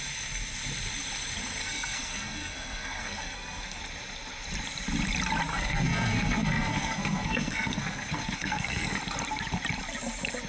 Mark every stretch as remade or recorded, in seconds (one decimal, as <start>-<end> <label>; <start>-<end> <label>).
0.0-1.6 recorded; 1.6-3.8 remade; 3.8-5.5 recorded; 5.5-9.0 remade; 9.0-10.5 recorded